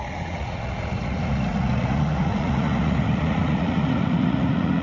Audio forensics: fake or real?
fake